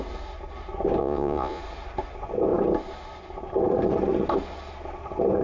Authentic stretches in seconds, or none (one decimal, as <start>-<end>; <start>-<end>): 0.0-1.0; 1.6-5.4